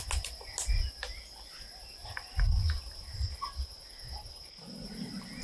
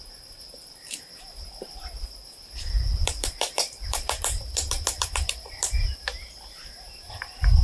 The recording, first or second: first